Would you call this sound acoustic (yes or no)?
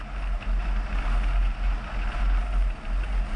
yes